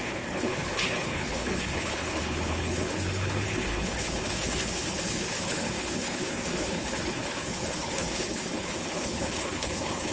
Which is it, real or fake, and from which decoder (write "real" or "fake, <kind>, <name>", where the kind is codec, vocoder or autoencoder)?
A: fake, codec, HILCodec